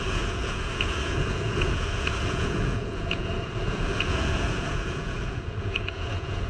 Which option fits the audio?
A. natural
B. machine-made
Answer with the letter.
B